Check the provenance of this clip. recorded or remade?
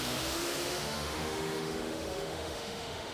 remade